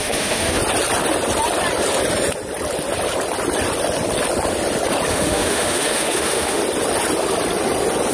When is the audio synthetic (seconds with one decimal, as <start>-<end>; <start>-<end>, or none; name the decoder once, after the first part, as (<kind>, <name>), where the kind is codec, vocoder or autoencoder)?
0.0-0.6 (autoencoder, DAC-VAE); 5.1-6.6